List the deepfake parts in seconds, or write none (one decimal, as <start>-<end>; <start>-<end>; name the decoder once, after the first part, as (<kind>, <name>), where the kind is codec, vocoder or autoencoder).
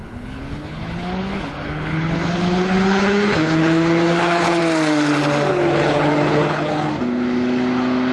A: 0.0-4.6 (codec, HILCodec); 5.5-6.9